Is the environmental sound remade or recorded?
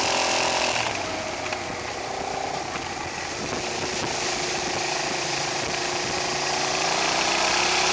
recorded